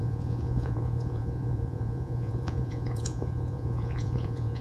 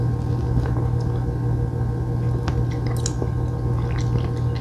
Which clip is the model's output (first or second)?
first